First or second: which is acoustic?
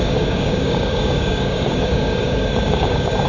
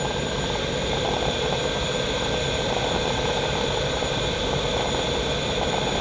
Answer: second